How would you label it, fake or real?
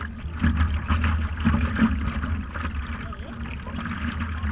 real